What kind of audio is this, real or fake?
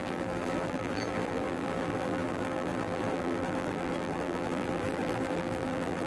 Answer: fake